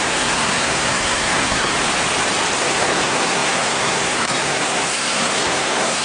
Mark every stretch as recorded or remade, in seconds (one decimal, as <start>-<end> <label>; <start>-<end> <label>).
0.0-1.7 remade; 1.7-2.6 recorded; 2.6-6.0 remade